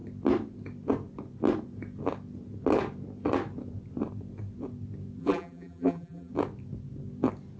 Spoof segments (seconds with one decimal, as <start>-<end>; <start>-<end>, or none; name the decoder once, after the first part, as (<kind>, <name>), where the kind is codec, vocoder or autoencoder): 5.2-6.3 (vocoder, BigVGAN v2)